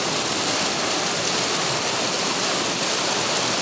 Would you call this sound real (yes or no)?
yes